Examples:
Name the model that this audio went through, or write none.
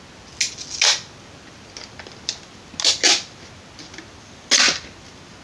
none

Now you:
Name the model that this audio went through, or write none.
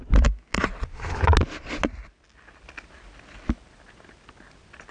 none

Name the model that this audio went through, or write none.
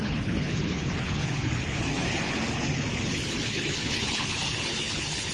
codec, HILCodec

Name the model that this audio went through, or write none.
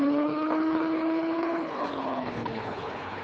codec, HILCodec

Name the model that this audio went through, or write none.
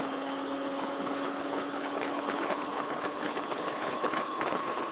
codec, HILCodec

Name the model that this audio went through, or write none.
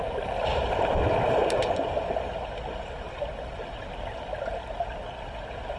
none